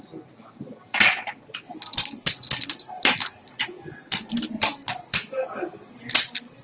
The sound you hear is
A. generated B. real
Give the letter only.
B